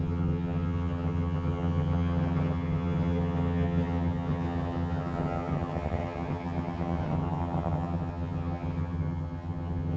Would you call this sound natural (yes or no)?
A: no